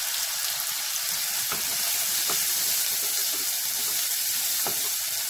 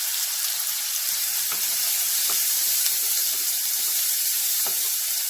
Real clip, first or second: first